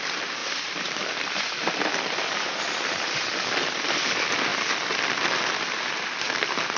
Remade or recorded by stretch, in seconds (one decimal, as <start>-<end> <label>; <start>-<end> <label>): 0.0-0.4 recorded; 0.4-3.3 remade; 3.3-6.8 recorded